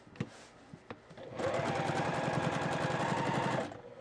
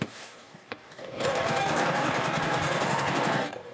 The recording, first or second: first